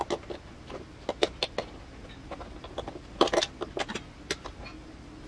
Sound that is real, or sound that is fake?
real